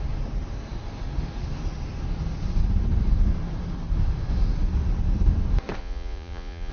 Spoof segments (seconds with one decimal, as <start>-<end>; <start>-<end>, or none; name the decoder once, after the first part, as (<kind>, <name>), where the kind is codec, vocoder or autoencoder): 5.8-6.7 (vocoder, Vocos)